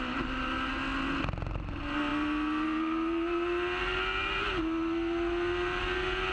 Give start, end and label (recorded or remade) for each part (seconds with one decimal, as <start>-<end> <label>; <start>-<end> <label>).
0.0-6.3 recorded

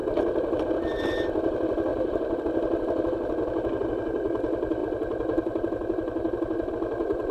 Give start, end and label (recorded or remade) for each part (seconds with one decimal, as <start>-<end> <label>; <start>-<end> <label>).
0.0-0.6 remade; 0.6-1.9 recorded; 1.9-2.4 remade; 2.4-4.8 recorded; 4.8-6.7 remade; 6.7-7.3 recorded

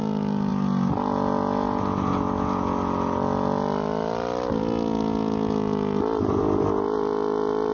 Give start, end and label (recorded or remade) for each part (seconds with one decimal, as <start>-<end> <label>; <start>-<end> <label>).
0.0-7.7 recorded

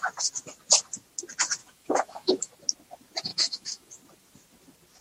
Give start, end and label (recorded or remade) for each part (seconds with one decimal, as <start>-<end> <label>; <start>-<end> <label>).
0.0-1.6 recorded; 1.6-2.5 remade; 2.5-3.3 recorded; 3.3-3.9 remade; 3.9-5.0 recorded

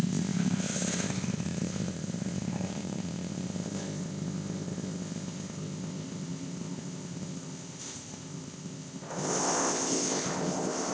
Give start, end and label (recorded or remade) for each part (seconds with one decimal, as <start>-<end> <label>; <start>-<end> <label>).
0.0-10.9 remade